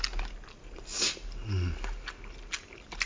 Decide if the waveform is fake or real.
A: real